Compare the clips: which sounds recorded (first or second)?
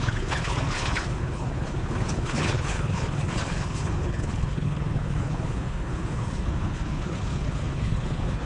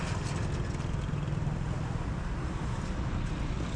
second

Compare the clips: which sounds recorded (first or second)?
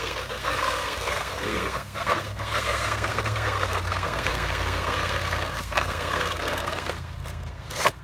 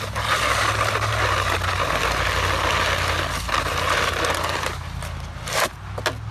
second